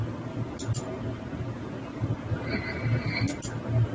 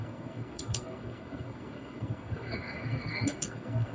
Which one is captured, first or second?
first